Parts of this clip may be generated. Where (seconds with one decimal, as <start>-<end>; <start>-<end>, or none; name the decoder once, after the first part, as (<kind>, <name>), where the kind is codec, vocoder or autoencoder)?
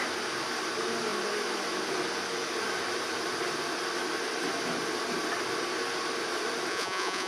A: 6.7-7.3 (vocoder, Vocos)